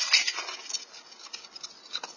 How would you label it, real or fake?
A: real